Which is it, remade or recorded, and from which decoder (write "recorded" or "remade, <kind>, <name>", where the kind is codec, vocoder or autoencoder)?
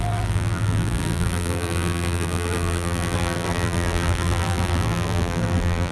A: remade, vocoder, BigVGAN v2